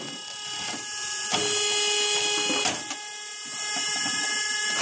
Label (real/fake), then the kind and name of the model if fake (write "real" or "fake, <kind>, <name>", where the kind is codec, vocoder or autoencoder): real